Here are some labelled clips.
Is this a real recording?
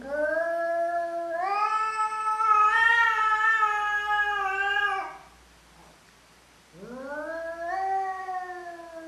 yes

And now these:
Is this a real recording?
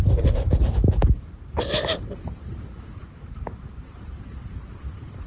no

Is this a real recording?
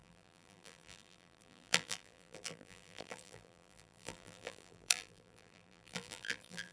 no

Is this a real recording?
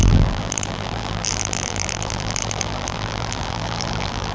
no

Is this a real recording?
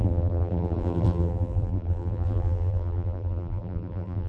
no